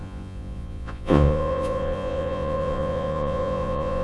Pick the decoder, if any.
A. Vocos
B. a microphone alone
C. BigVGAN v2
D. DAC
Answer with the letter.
A